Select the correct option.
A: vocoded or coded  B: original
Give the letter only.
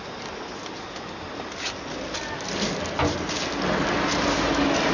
B